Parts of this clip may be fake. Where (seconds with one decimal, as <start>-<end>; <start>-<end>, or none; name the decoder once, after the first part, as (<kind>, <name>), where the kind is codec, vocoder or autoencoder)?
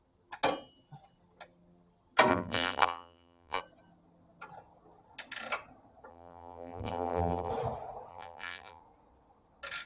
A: 2.3-3.6 (vocoder, BigVGAN v2); 6.1-7.5; 8.1-8.8